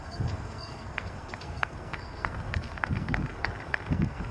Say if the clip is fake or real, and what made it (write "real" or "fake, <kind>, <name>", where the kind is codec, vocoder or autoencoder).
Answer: fake, codec, SNAC